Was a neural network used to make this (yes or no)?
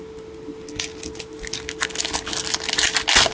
no